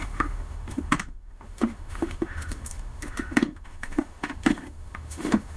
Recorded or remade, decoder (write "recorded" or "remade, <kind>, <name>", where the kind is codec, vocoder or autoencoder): remade, autoencoder, DAC-VAE